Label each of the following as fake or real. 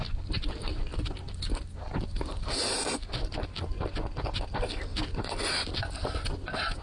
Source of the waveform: real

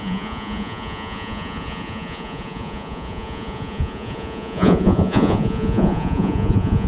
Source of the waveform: fake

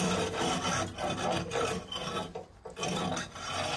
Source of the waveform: real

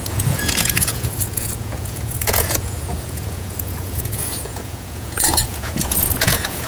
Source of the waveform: fake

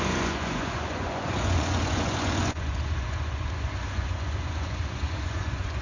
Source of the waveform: fake